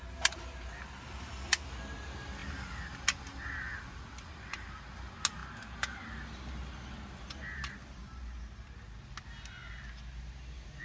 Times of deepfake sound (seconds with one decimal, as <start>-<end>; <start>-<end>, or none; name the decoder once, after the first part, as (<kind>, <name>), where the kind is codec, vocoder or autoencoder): none

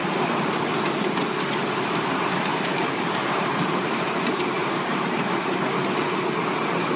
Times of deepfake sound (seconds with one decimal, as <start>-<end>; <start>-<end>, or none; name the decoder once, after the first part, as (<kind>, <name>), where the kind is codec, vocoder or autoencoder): 0.0-0.8 (vocoder, BigVGAN v2); 2.5-5.6

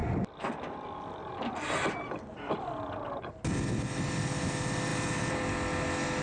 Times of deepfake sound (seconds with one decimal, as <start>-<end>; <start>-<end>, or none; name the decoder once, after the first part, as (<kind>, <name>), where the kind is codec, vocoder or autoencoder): 4.9-5.4 (vocoder, BigVGAN v2)

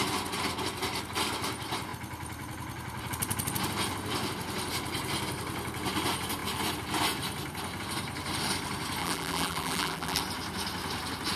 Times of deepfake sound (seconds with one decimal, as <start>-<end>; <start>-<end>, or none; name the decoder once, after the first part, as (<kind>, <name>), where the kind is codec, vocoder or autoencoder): 9.0-10.2 (vocoder, BigVGAN v2)

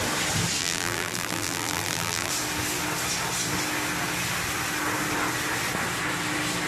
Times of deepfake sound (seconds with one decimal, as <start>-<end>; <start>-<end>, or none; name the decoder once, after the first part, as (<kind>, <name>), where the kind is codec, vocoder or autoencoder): 0.6-2.3 (vocoder, BigVGAN v2)

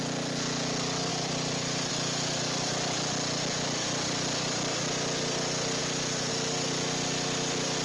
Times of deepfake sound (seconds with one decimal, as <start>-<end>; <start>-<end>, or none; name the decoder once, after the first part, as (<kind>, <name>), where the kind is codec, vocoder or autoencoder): 1.1-1.9 (vocoder, BigVGAN v2); 5.8-6.3

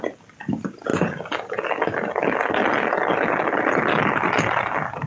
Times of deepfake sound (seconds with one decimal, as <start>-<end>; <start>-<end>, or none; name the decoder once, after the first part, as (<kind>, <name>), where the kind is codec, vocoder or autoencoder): none